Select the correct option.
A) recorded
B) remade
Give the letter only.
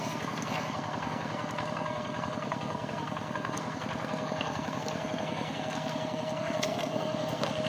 B